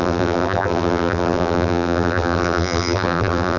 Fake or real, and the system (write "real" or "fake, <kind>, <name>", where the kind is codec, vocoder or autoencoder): fake, vocoder, BigVGAN v2